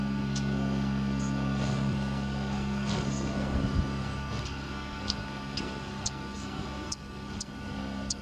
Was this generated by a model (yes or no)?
yes